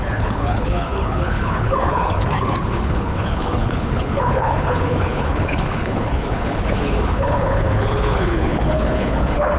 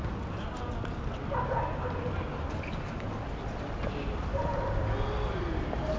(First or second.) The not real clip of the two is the first